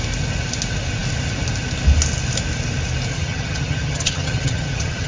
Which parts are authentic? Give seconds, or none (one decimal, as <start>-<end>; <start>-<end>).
0.0-3.1